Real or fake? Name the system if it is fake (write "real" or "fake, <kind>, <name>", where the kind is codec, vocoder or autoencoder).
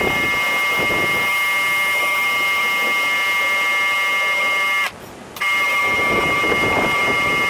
real